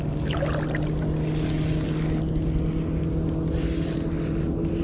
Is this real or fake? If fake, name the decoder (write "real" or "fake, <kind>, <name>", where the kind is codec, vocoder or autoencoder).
real